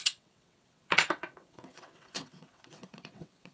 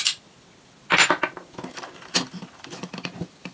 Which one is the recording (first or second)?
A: second